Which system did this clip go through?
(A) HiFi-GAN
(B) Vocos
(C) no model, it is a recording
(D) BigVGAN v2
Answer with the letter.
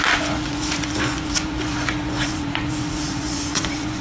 B